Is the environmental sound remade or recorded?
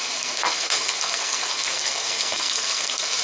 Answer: remade